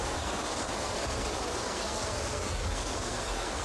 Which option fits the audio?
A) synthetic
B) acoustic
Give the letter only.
A